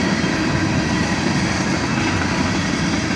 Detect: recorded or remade recorded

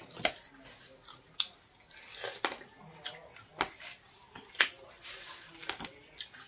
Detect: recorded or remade recorded